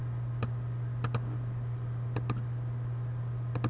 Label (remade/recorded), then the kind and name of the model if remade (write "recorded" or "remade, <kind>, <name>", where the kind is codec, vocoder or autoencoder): recorded